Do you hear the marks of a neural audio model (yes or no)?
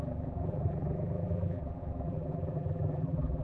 yes